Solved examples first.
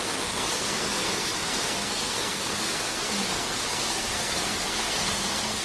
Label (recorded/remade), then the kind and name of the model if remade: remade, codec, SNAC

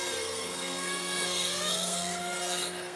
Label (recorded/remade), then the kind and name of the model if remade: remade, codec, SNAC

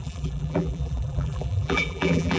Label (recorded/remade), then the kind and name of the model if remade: remade, vocoder, BigVGAN v2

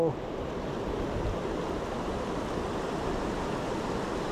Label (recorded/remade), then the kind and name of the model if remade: recorded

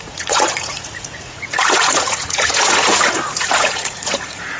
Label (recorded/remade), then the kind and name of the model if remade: remade, vocoder, Vocos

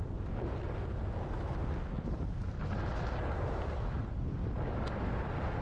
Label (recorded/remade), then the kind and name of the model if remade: recorded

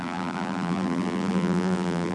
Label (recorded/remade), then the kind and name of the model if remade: remade, vocoder, BigVGAN v2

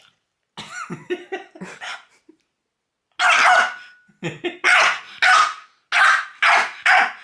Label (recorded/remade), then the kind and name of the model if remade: recorded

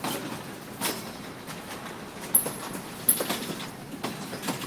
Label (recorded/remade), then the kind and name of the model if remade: recorded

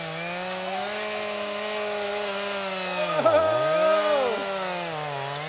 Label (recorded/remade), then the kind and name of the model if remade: recorded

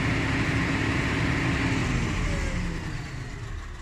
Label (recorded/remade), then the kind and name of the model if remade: recorded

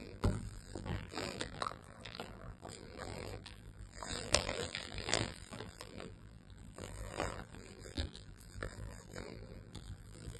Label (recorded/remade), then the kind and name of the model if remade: remade, vocoder, BigVGAN v2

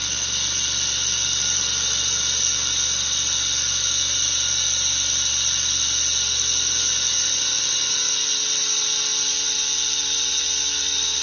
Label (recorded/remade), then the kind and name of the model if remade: recorded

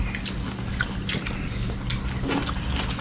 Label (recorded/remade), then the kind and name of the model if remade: recorded